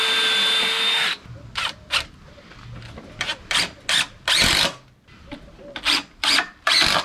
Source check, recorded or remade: recorded